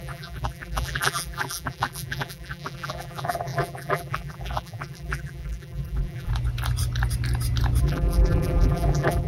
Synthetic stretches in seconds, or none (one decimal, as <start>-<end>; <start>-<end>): 0.0-6.3; 7.8-9.3

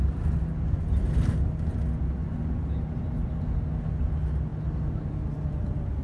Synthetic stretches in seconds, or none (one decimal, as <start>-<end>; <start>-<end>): none

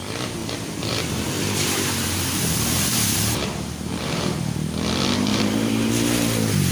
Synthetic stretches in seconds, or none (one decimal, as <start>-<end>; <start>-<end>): 0.4-4.4; 5.3-5.9

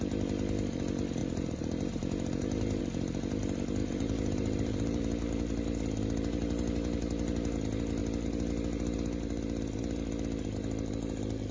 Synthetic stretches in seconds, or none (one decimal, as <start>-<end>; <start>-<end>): 1.2-2.8; 3.8-5.0

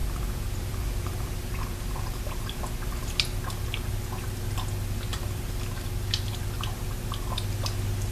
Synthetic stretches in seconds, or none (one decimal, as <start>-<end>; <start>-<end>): 0.0-2.6; 5.1-6.3